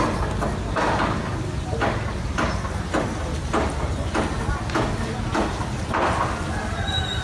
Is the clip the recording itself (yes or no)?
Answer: yes